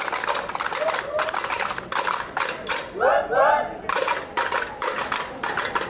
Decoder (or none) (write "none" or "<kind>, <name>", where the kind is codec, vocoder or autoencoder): none